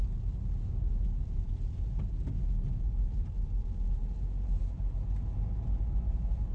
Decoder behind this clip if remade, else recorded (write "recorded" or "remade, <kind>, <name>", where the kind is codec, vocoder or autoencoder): recorded